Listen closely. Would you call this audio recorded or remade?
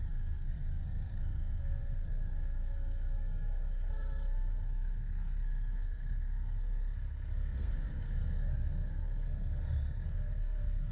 remade